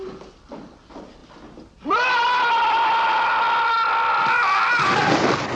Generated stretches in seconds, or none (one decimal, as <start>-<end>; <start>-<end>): none